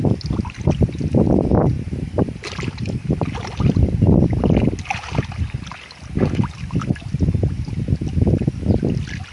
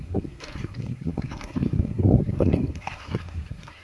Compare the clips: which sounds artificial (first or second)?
second